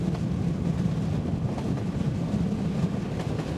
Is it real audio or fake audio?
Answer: real